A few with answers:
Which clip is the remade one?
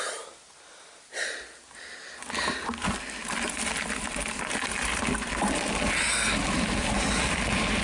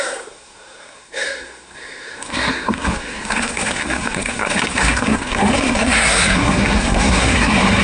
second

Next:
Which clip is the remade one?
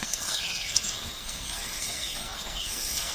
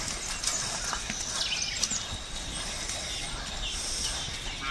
first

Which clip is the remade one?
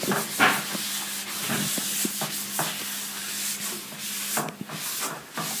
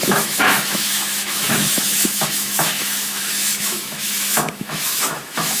second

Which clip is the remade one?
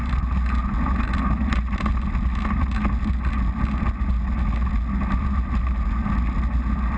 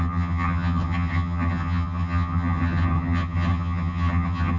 second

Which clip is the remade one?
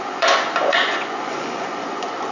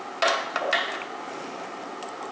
first